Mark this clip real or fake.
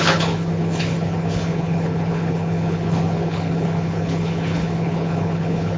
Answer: fake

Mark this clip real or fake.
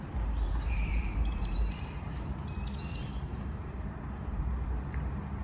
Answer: fake